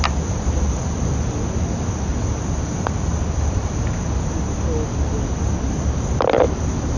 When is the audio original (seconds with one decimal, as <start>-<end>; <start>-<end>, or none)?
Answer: 0.0-2.1; 3.8-7.0